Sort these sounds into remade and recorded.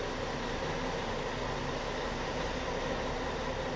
recorded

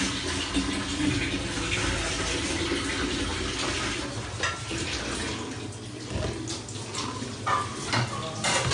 recorded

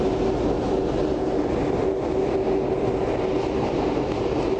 recorded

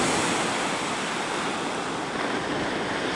recorded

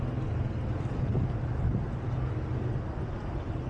recorded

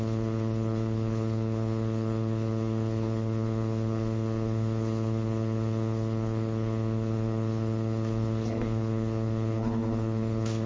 remade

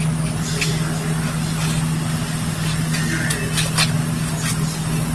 recorded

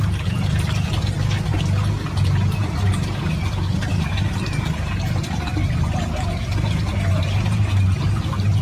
recorded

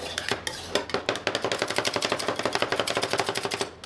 recorded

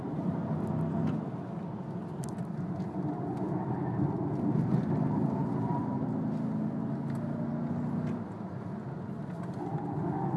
recorded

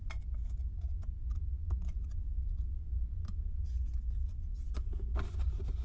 recorded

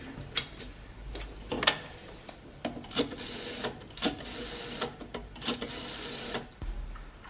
recorded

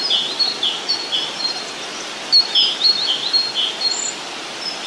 recorded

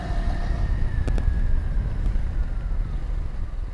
recorded